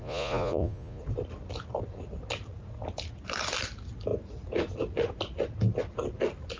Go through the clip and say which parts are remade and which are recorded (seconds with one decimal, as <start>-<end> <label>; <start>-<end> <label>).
0.0-1.0 remade; 1.0-6.6 recorded